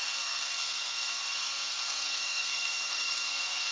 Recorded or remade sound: remade